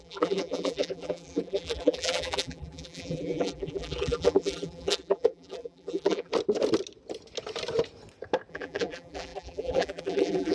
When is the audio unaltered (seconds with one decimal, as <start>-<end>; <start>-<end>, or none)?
6.3-8.5